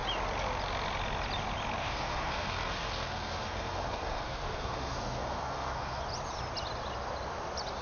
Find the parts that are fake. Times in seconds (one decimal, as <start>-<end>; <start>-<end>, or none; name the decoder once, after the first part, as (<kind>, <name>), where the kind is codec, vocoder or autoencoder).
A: 1.8-6.0 (codec, SNAC)